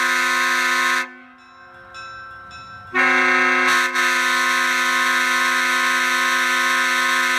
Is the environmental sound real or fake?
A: real